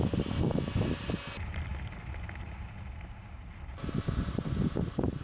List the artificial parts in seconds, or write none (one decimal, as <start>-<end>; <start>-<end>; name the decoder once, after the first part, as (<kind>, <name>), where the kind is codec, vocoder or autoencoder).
none